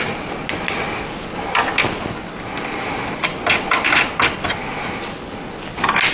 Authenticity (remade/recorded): recorded